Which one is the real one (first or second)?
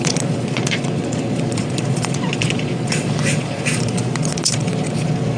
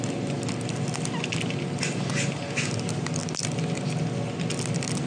second